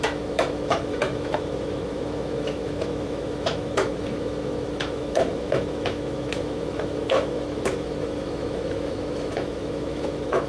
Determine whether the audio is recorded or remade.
remade